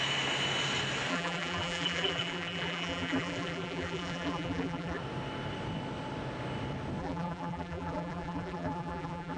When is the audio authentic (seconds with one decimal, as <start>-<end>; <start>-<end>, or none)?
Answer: 0.0-1.1; 5.0-7.0

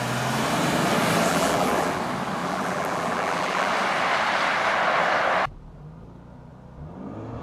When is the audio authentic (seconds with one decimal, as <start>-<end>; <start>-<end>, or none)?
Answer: 0.0-1.3; 2.0-2.4; 3.7-7.4

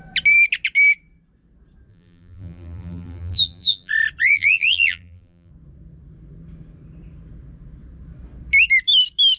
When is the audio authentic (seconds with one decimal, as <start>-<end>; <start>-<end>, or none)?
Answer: 0.0-1.9; 3.9-4.3; 5.5-9.4